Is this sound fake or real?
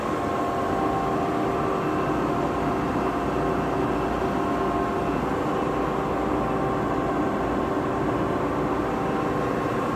real